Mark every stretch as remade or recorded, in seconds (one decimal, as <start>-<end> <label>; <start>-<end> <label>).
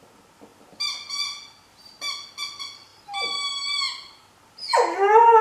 0.0-5.4 recorded